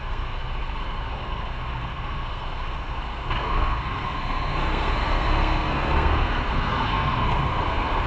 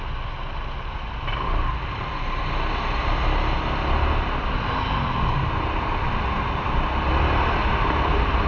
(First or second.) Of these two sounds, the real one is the second